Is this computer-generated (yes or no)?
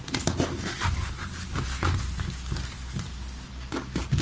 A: no